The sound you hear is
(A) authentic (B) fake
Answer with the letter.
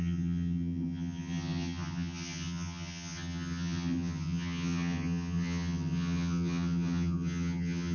B